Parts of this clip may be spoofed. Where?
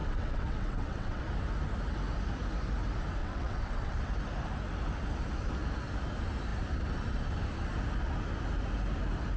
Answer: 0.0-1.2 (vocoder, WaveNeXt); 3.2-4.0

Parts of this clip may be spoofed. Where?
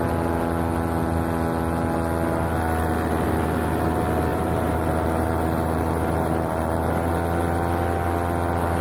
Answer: 4.3-7.1 (vocoder, BigVGAN v2)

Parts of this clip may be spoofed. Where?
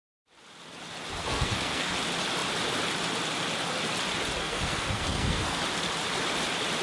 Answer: 1.2-1.9 (codec, SNAC); 4.4-5.6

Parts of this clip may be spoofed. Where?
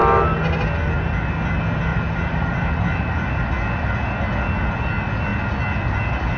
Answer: 1.9-2.7 (vocoder, BigVGAN v2)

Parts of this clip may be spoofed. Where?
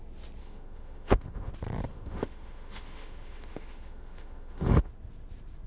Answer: 0.4-1.5 (autoencoder, DAC-VAE); 1.9-4.9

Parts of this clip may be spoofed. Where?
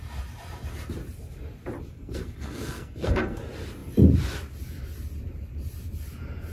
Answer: 1.9-3.4 (codec, SNAC)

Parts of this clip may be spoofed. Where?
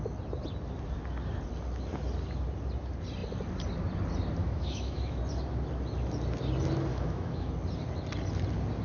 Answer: 4.4-5.2 (autoencoder, DAC-VAE); 6.9-7.5